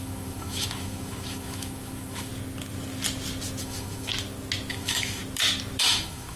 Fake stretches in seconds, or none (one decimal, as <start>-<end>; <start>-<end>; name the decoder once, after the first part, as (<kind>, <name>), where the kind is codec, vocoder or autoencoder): 0.0-2.3 (autoencoder, DAC-VAE); 3.6-4.1; 4.7-5.2; 5.8-6.4